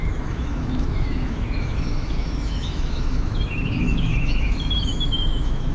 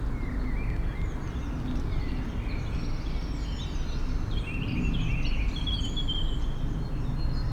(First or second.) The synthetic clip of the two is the first